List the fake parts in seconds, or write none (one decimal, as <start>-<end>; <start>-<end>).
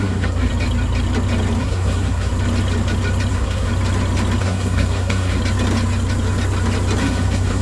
0.0-0.5; 1.6-2.3; 3.3-3.7; 4.4-5.4; 7.0-7.6